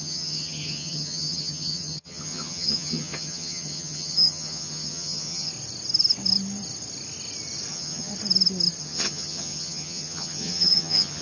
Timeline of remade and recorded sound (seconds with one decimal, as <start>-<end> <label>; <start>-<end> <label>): 0.0-5.5 remade; 5.5-7.7 recorded; 7.7-8.1 remade; 8.1-8.8 recorded; 8.8-11.2 remade